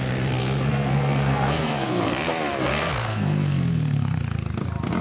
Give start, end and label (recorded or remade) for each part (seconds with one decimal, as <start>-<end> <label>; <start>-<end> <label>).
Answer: 0.0-0.4 recorded; 0.4-2.0 remade; 2.0-2.7 recorded; 2.7-4.2 remade; 4.2-5.0 recorded